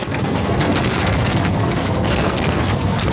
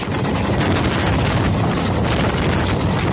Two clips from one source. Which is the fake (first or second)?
first